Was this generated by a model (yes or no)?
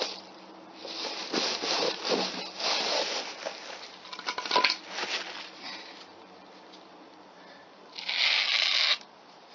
no